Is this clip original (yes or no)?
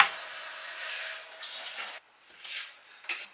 yes